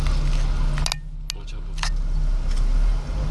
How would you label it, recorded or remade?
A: recorded